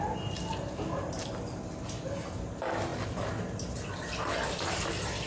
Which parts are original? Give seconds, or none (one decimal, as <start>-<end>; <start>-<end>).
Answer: 0.0-5.3